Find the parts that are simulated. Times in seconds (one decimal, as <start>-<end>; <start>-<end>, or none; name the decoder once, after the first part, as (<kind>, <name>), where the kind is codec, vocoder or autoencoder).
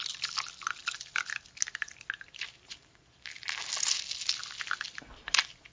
none